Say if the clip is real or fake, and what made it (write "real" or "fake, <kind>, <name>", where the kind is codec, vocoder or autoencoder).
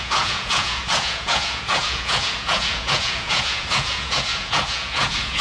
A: fake, vocoder, Vocos